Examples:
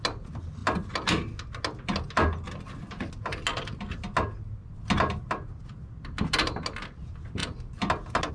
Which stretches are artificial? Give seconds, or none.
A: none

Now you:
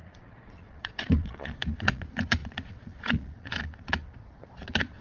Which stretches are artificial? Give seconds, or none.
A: 0.0-5.0 (vocoder, Vocos)